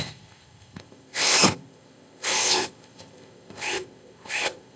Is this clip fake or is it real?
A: fake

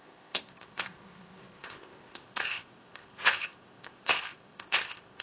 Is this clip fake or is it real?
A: fake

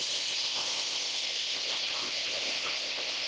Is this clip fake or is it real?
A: fake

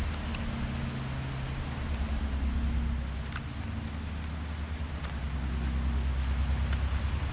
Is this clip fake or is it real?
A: real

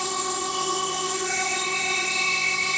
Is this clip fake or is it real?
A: fake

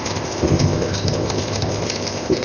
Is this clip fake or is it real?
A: fake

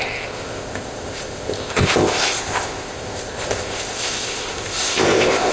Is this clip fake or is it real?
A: fake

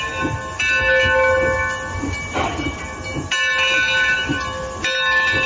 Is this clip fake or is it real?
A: real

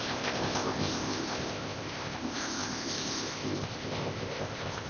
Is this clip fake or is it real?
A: fake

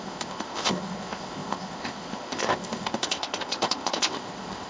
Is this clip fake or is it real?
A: fake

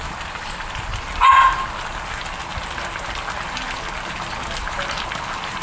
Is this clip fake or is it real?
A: real